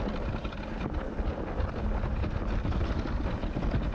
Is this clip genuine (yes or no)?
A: yes